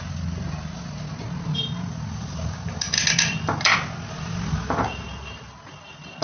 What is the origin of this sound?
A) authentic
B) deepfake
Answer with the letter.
A